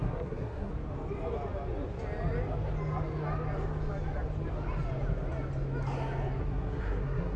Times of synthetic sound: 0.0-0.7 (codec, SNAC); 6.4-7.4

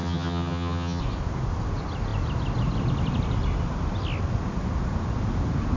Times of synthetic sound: 0.0-1.0 (vocoder, HiFi-GAN)

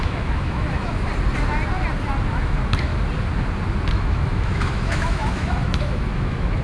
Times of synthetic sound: 0.0-1.1 (autoencoder, DAC-VAE); 2.3-2.9; 3.9-6.6

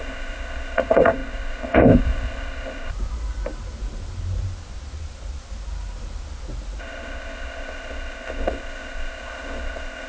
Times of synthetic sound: 0.0-2.9 (codec, ZipCodec); 6.8-10.1

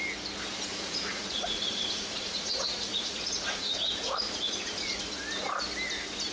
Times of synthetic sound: 0.7-2.5 (vocoder, Vocos); 2.9-5.3